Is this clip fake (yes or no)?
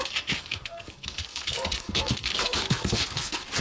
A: yes